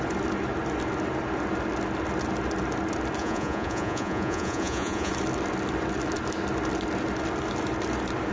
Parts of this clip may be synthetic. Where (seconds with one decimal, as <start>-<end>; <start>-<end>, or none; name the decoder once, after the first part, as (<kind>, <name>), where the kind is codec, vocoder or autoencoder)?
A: 3.2-5.1 (vocoder, Vocos)